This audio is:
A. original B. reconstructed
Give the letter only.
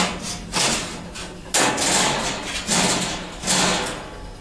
A